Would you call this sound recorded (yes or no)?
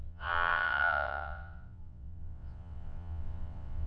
no